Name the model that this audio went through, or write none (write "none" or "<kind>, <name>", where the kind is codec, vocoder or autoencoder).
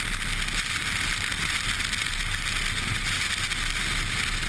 none